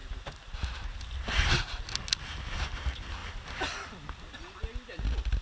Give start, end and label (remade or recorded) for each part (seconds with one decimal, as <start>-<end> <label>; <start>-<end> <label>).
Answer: 0.0-1.1 remade; 1.1-5.4 recorded